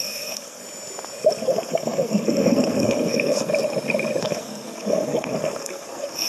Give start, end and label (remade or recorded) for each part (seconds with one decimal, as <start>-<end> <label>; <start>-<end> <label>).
0.0-0.6 remade; 0.6-1.4 recorded; 1.4-3.5 remade; 3.5-4.2 recorded; 4.2-6.3 remade